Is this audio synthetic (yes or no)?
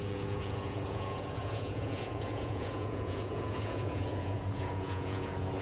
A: yes